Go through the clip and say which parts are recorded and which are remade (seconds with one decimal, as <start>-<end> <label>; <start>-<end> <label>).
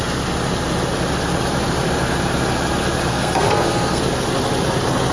0.0-3.1 recorded; 3.1-4.0 remade; 4.0-5.1 recorded